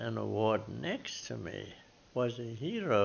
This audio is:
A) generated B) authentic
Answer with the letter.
B